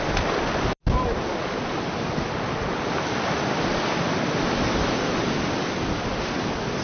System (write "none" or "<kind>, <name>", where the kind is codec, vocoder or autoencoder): none